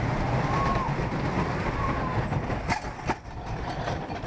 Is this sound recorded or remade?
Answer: recorded